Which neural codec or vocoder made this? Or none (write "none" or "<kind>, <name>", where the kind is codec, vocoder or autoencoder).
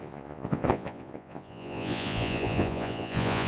vocoder, Vocos